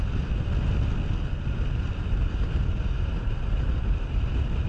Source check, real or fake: real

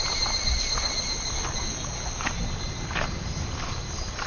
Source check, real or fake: real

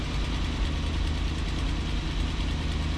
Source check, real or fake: real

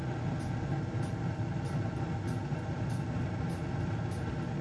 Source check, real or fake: real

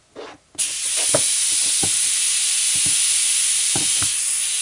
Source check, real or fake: real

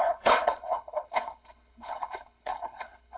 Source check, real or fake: fake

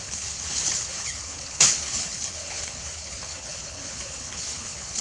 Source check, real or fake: fake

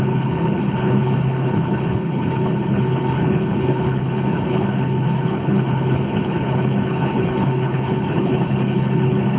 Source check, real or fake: fake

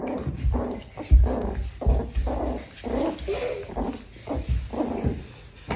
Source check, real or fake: real